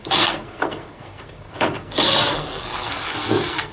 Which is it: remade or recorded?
remade